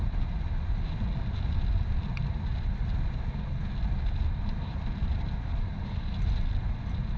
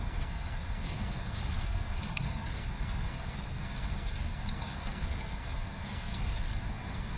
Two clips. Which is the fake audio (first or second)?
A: second